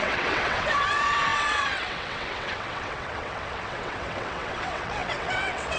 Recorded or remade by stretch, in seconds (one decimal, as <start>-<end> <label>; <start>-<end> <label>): 0.0-5.8 remade